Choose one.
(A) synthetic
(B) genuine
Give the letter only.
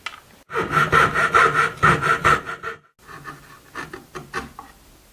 B